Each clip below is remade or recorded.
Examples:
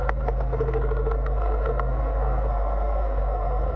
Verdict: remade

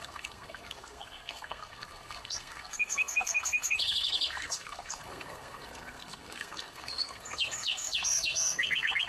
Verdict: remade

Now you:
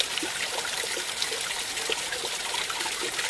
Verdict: recorded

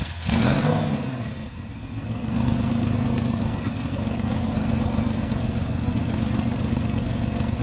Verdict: remade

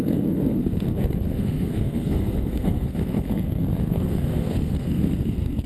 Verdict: remade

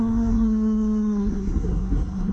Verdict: remade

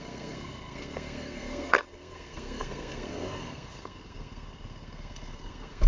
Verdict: remade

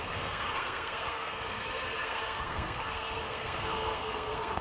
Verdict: remade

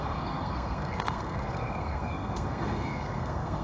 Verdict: remade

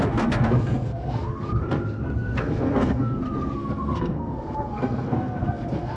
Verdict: remade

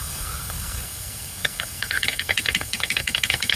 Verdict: remade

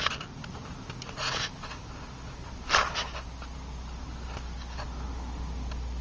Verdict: recorded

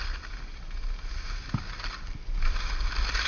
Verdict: recorded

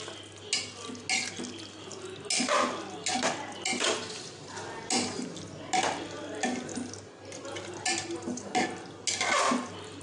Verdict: recorded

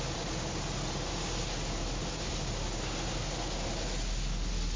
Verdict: recorded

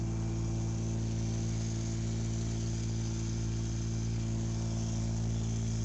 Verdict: recorded